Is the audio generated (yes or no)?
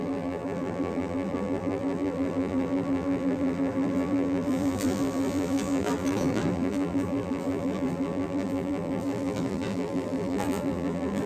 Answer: yes